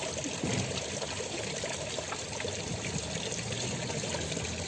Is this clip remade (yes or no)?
no